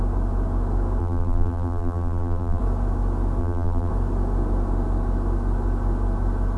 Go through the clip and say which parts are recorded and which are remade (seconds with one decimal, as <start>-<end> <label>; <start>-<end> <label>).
0.0-1.0 recorded; 1.0-2.6 remade; 2.6-3.4 recorded; 3.4-3.9 remade; 3.9-6.6 recorded